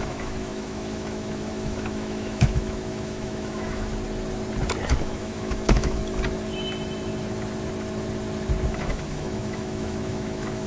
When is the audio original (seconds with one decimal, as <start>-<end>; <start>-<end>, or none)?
3.9-5.0; 6.0-8.7